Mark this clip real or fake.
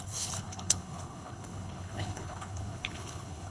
fake